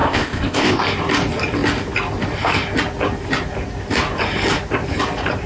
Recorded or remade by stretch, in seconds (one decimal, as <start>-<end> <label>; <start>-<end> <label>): 0.0-0.8 remade; 0.8-5.5 recorded

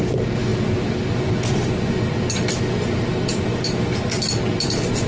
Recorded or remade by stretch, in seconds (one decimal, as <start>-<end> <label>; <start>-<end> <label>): 0.0-5.1 recorded

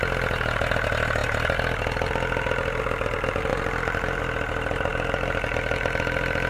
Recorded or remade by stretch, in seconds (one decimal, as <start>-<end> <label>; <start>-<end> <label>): 0.0-3.5 recorded; 3.5-4.2 remade; 4.2-4.9 recorded; 4.9-5.4 remade; 5.4-6.5 recorded

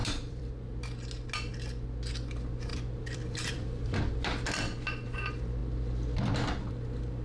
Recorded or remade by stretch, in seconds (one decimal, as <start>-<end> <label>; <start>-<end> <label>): 0.0-0.5 remade; 0.5-2.7 recorded; 2.7-4.0 remade; 4.0-7.2 recorded

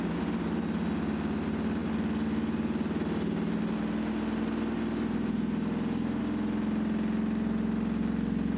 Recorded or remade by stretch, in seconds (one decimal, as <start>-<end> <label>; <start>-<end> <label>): 0.0-8.6 recorded

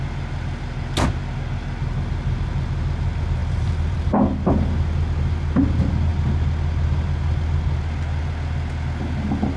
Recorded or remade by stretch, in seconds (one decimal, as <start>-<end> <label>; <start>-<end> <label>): 0.0-3.4 recorded; 3.4-4.1 remade; 4.1-9.6 recorded

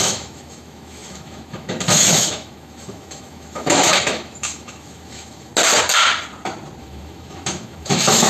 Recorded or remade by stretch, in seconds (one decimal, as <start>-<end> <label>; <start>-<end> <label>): 0.0-5.5 remade; 5.5-6.8 recorded; 6.8-8.3 remade